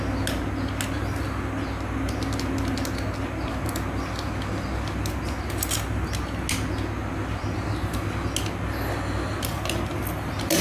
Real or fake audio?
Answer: real